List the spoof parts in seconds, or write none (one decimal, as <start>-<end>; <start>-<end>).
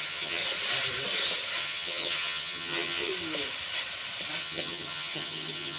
0.0-0.4; 1.6-3.1; 4.4-5.8